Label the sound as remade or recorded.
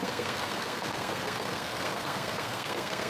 remade